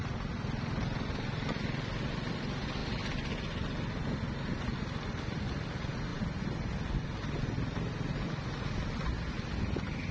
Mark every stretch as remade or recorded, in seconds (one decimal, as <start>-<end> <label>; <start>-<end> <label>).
0.0-10.1 recorded